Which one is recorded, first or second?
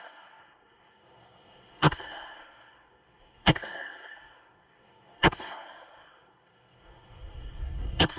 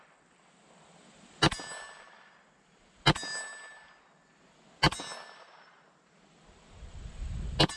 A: second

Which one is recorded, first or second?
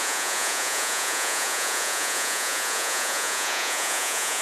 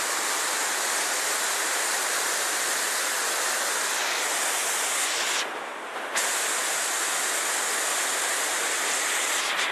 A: second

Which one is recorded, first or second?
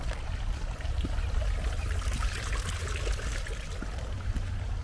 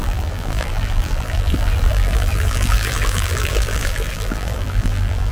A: first